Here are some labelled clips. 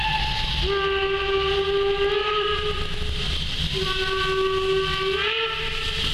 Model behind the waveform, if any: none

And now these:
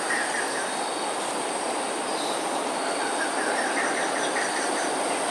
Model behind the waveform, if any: none